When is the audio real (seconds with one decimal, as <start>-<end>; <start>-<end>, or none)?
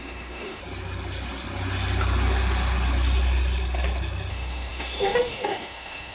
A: 0.6-4.3